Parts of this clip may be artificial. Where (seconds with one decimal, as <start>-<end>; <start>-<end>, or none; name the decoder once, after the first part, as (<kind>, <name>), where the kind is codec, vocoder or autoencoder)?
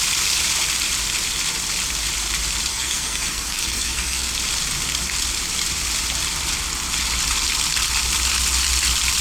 2.7-4.3 (codec, SNAC)